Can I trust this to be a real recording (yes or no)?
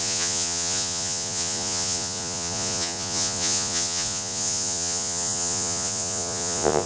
no